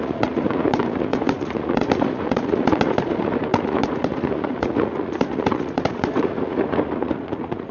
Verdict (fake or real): fake